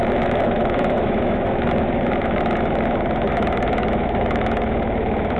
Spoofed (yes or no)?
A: yes